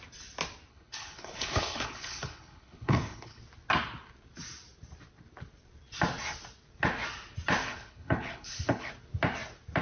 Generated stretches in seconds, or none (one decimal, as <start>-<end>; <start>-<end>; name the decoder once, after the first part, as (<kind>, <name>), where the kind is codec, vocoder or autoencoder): 0.7-3.4 (codec, HILCodec); 7.6-8.9